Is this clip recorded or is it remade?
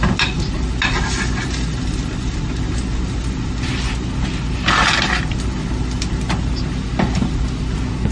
recorded